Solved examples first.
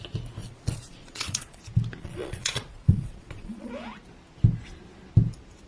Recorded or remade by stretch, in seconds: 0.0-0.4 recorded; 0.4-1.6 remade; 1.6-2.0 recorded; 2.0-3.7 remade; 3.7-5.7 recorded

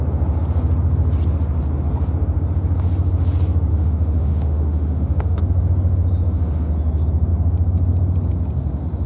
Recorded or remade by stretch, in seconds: 0.0-3.7 recorded; 3.7-5.4 remade; 5.4-9.1 recorded

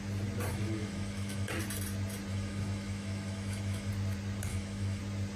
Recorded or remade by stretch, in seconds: 0.0-0.5 recorded; 0.5-1.5 remade; 1.5-2.3 recorded; 2.3-3.9 remade; 3.9-4.5 recorded; 4.5-5.0 remade; 5.0-5.4 recorded

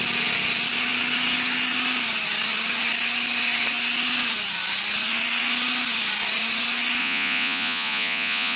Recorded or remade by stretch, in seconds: 0.0-7.0 recorded; 7.0-8.6 remade

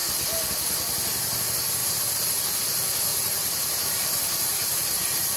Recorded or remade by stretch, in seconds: 0.0-1.8 recorded; 1.8-2.5 remade; 2.5-3.1 recorded; 3.1-5.4 remade

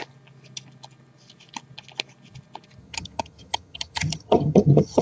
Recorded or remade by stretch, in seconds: 0.0-2.8 recorded; 2.8-5.0 remade